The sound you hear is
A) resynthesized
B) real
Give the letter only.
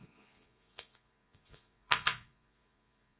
A